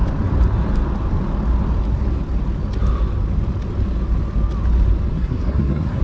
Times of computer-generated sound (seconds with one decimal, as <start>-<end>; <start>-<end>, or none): 5.1-6.0

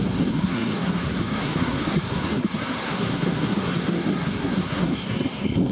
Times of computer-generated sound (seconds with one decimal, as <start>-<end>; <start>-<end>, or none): 0.0-5.7

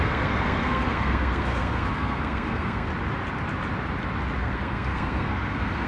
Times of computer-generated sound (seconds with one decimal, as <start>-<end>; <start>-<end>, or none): 0.0-2.9; 4.4-5.9

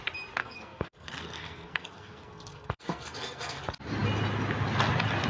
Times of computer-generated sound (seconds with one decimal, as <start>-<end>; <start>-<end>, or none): 0.4-3.6